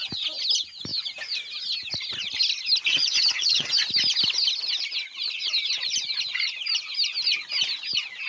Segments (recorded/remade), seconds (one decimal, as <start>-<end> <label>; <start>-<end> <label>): 0.0-2.9 recorded; 2.9-3.7 remade; 3.7-8.3 recorded